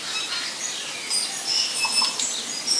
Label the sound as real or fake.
real